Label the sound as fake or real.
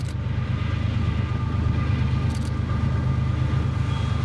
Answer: real